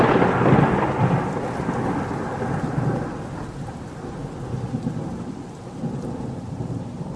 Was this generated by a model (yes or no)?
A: no